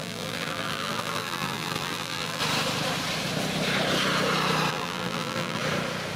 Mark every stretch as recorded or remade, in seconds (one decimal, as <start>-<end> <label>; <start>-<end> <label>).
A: 0.0-2.4 remade; 2.4-4.7 recorded; 4.7-5.6 remade; 5.6-6.2 recorded